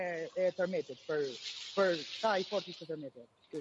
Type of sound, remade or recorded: recorded